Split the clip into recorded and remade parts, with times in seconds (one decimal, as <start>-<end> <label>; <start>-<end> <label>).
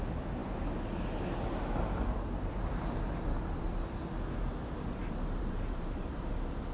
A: 0.0-5.0 recorded; 5.0-6.3 remade; 6.3-6.7 recorded